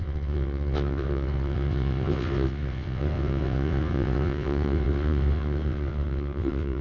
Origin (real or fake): fake